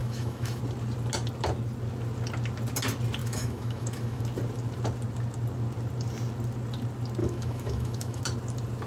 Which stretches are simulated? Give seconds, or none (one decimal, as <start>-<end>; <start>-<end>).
0.0-0.6; 3.2-4.2; 7.2-8.2